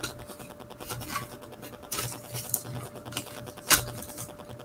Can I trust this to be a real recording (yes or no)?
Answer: yes